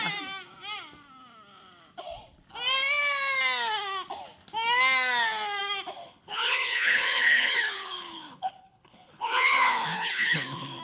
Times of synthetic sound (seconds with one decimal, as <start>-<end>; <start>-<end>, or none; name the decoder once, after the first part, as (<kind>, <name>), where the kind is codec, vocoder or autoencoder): 6.0-10.8 (codec, HILCodec)